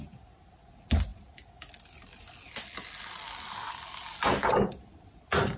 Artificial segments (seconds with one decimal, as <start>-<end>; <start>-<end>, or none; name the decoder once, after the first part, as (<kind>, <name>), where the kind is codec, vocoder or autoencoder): none